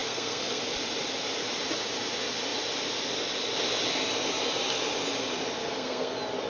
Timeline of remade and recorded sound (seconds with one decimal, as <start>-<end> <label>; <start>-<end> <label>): 0.0-0.6 remade; 0.6-5.6 recorded; 5.6-6.1 remade; 6.1-6.5 recorded

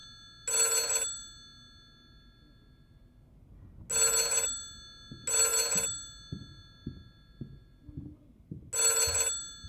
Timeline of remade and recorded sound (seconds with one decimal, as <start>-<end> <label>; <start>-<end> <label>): 0.0-9.7 recorded

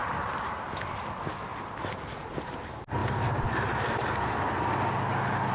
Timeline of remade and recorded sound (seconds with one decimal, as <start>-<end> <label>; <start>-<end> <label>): 0.0-0.8 remade; 0.8-1.5 recorded; 1.5-2.2 remade; 2.2-3.0 recorded; 3.0-4.1 remade; 4.1-5.5 recorded

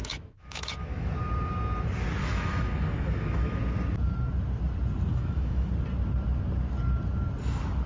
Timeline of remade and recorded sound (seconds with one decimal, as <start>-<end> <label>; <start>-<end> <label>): 0.0-1.1 remade; 1.1-2.2 recorded; 2.2-3.6 remade; 3.6-5.1 recorded; 5.1-5.7 remade; 5.7-7.9 recorded

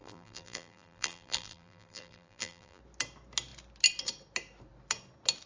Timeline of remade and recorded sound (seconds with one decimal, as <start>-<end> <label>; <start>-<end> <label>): 0.0-2.8 remade; 2.8-5.5 recorded

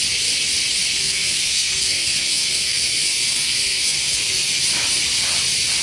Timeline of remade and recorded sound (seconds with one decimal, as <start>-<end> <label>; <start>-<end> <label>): 0.0-1.0 recorded; 1.0-4.5 remade; 4.5-5.8 recorded

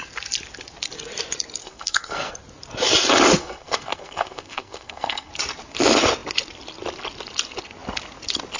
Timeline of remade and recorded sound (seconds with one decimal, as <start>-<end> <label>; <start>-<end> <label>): 0.0-1.6 recorded; 1.6-2.3 remade; 2.3-3.4 recorded; 3.4-5.3 remade; 5.3-8.6 recorded